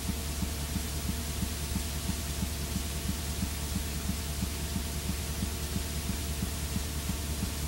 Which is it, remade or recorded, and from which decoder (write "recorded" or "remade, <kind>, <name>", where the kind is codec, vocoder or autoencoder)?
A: recorded